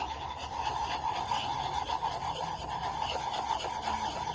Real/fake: real